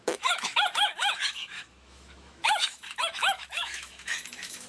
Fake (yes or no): yes